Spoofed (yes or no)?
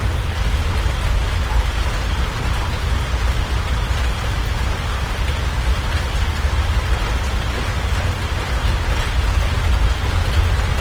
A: no